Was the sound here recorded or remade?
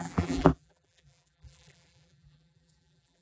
remade